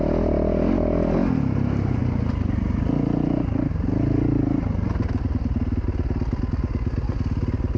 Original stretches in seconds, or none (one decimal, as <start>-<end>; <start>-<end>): 0.0-7.8